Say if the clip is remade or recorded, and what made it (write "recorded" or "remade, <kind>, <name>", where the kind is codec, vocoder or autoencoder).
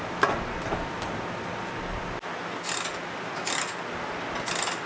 recorded